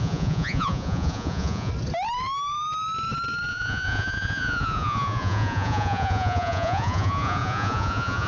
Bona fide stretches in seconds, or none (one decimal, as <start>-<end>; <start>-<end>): 1.7-3.5